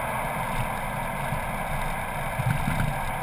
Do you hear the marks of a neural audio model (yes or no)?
no